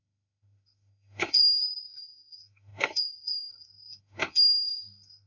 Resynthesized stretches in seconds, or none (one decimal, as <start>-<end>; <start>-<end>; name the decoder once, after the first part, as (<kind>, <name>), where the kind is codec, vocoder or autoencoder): 0.0-5.3 (autoencoder, DAC-VAE)